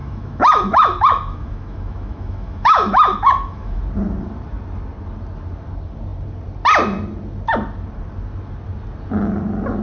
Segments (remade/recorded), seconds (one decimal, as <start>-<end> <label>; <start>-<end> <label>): 0.0-3.8 remade; 3.8-9.8 recorded